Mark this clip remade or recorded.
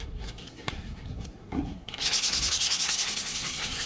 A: remade